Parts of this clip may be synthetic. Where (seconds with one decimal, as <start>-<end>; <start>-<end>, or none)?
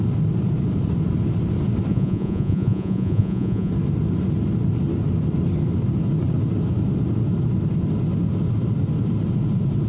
1.9-3.7